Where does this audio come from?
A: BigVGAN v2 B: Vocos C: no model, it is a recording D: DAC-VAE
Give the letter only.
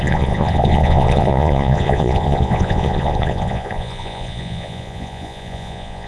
B